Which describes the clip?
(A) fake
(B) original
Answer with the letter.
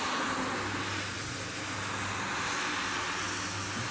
B